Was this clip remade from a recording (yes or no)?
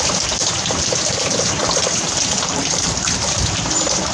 yes